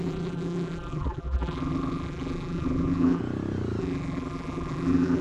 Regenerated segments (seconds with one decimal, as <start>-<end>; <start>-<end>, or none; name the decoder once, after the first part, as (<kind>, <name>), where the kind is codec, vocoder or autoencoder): 0.0-3.2 (vocoder, BigVGAN v2); 3.8-5.2